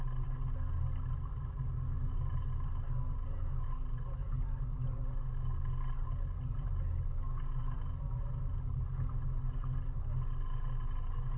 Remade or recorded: recorded